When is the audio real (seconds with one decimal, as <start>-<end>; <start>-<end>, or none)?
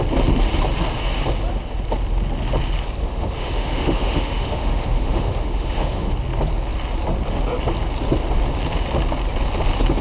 0.0-3.0; 6.1-10.0